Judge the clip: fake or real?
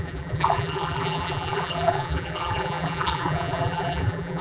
fake